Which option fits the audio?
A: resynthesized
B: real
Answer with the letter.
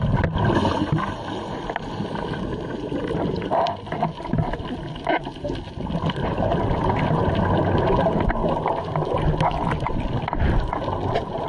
B